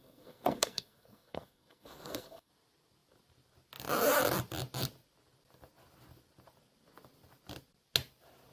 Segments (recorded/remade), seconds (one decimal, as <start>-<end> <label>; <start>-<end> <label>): 0.0-2.5 remade; 2.5-8.5 recorded